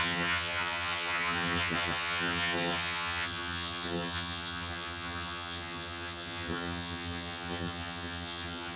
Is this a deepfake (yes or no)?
yes